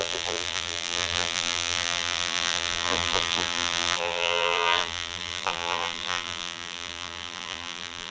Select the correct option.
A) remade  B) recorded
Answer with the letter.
A